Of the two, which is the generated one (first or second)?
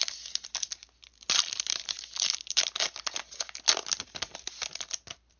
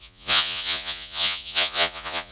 second